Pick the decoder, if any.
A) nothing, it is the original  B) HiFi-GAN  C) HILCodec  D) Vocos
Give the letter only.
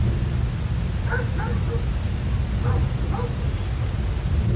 A